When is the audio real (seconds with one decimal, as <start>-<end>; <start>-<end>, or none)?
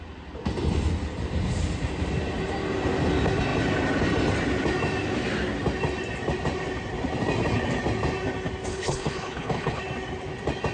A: 0.0-8.7; 9.8-10.7